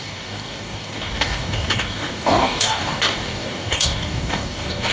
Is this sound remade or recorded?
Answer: remade